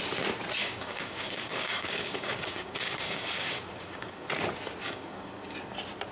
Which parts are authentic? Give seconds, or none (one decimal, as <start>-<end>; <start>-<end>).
0.0-0.6; 4.3-4.8; 5.4-6.1

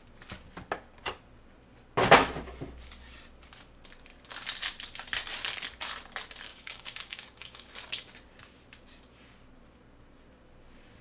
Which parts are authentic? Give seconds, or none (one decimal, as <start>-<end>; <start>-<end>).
0.0-6.5; 7.7-11.0